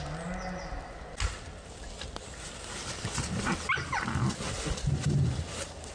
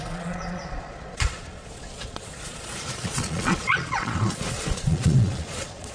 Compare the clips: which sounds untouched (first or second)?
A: first